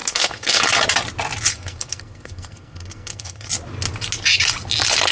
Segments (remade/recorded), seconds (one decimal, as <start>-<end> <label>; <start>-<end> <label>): 0.0-0.6 remade; 0.6-1.5 recorded; 1.5-3.5 remade; 3.5-5.1 recorded